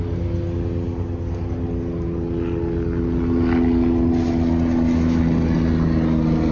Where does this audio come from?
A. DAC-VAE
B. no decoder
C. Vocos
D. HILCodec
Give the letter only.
B